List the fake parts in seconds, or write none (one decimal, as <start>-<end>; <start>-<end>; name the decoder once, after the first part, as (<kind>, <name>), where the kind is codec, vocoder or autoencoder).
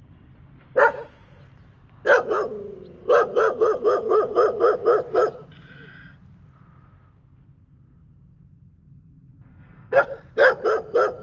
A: 9.5-10.0 (codec, SNAC)